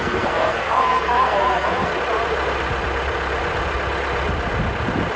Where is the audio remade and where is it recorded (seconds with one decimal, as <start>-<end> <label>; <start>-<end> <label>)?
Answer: 0.0-1.9 remade; 1.9-5.2 recorded